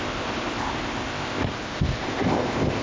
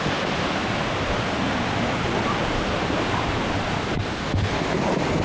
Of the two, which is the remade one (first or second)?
first